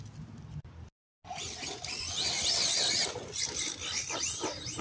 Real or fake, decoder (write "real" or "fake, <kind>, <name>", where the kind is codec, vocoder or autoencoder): real